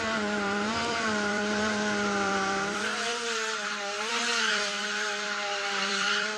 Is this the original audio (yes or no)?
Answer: no